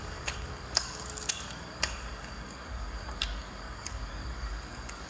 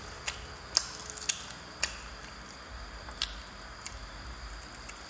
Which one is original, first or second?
second